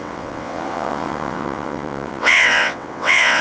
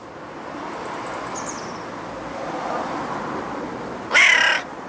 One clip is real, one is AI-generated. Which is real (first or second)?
second